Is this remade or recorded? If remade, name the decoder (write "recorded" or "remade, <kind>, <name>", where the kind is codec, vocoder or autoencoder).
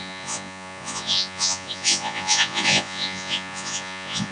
remade, vocoder, Vocos